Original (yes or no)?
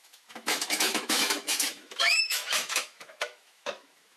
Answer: no